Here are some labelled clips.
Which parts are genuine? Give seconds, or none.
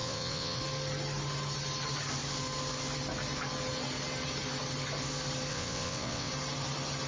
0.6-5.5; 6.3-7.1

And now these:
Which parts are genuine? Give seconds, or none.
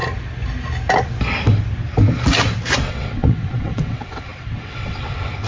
0.0-2.9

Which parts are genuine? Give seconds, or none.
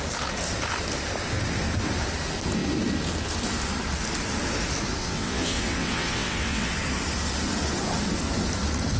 0.0-5.0; 6.7-9.0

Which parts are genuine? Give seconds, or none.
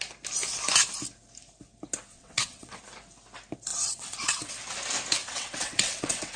0.0-2.1; 2.8-3.7; 4.5-5.2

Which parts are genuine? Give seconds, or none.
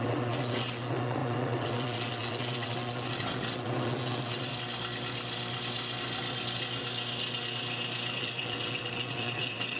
4.5-8.2